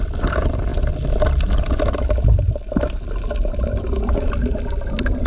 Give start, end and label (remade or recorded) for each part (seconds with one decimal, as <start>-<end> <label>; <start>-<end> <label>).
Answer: 0.0-5.3 recorded

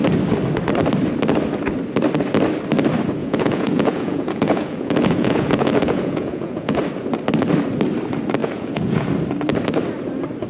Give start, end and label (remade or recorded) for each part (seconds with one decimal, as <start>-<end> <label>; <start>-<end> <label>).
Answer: 0.0-3.2 recorded; 3.2-6.8 remade; 6.8-8.4 recorded; 8.4-9.1 remade; 9.1-10.5 recorded

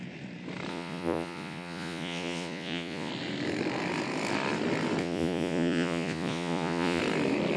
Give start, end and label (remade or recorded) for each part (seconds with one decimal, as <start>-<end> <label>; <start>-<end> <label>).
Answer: 0.0-0.7 recorded; 0.7-3.1 remade; 3.1-5.0 recorded; 5.0-7.0 remade; 7.0-7.6 recorded

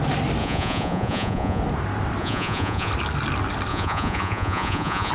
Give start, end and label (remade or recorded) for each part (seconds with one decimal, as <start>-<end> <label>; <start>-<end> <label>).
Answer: 0.0-0.4 recorded; 0.4-1.6 remade; 1.6-2.2 recorded; 2.2-2.9 remade; 2.9-3.7 recorded; 3.7-5.1 remade

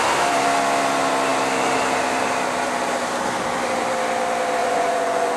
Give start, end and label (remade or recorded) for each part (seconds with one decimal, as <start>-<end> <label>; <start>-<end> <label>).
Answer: 0.0-4.6 recorded; 4.6-5.4 remade

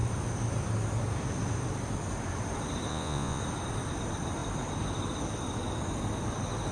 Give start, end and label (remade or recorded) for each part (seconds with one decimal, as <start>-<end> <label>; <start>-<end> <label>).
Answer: 0.0-2.9 recorded; 2.9-3.4 remade; 3.4-6.7 recorded